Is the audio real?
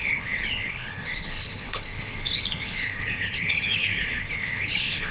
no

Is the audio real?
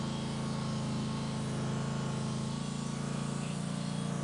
yes